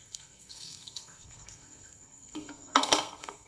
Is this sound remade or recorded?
remade